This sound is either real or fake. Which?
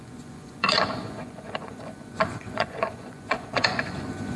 fake